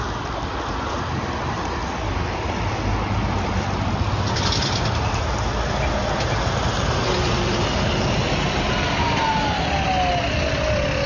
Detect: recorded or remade recorded